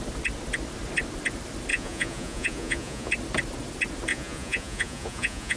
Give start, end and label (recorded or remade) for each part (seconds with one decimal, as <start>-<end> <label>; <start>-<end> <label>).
0.0-1.7 recorded; 1.7-3.1 remade; 3.1-4.1 recorded; 4.1-5.6 remade